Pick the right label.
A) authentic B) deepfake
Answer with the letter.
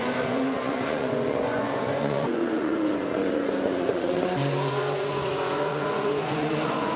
B